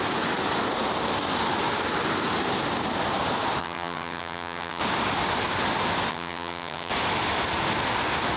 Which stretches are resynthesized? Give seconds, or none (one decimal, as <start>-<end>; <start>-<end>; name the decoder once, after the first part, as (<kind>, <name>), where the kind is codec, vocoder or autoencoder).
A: 3.6-4.8 (vocoder, HiFi-GAN); 6.1-6.9